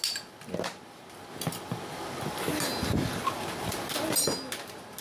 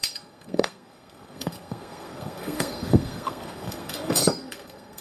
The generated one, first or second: second